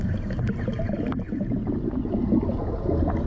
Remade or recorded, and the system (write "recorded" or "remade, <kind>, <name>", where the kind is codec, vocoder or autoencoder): recorded